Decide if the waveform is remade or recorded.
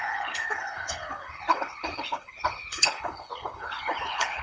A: remade